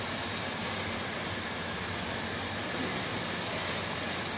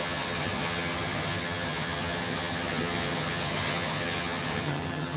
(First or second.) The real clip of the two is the first